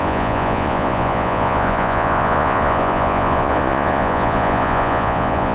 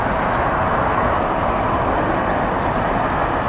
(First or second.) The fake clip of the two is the first